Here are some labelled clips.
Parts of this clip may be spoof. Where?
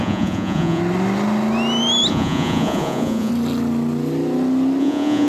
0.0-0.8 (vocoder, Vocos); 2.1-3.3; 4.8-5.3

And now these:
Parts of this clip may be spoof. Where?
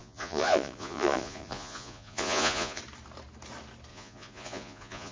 0.0-2.8 (vocoder, Vocos); 3.9-5.1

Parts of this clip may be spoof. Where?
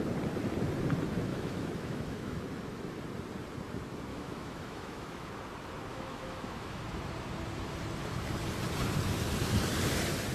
1.3-2.4 (autoencoder, DAC-VAE); 4.1-5.3; 5.9-6.8